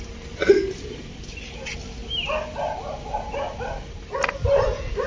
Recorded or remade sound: recorded